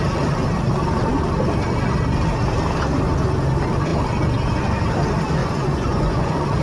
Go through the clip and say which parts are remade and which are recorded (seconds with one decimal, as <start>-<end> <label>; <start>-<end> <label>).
0.0-5.4 recorded; 5.4-6.6 remade